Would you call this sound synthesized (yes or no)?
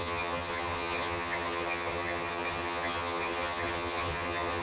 yes